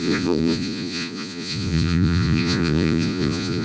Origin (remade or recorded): remade